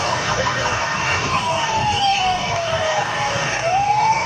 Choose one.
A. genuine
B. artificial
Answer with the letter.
B